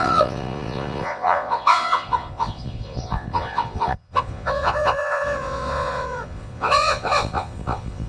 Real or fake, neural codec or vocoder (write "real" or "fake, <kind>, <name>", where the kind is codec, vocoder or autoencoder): fake, vocoder, Vocos